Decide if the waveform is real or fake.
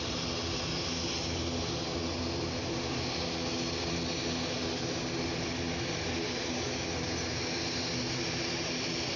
real